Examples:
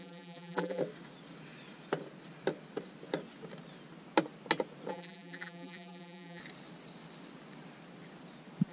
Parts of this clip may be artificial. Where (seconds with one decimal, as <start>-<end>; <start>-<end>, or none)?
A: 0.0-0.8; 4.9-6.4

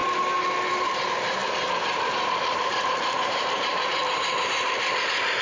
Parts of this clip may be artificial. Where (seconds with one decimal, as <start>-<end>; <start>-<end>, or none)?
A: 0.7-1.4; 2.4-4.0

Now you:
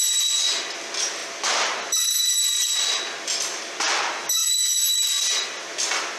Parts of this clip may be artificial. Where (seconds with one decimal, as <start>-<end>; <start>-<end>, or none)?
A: none